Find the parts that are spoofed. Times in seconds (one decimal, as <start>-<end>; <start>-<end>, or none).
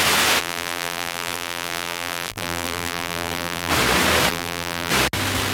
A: 0.4-3.7; 4.3-4.9